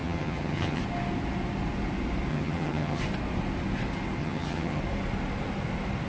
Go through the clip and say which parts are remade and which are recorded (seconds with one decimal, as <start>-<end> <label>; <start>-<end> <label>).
0.0-0.8 remade; 0.8-2.3 recorded; 2.3-3.0 remade; 3.0-4.2 recorded; 4.2-4.8 remade; 4.8-6.1 recorded